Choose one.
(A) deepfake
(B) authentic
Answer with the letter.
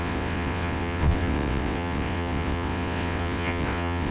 A